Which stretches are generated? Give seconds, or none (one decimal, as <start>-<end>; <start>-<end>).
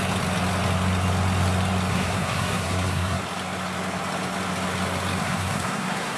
1.9-3.2; 5.2-6.2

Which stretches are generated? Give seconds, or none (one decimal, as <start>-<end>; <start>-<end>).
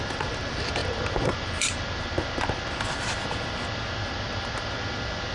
none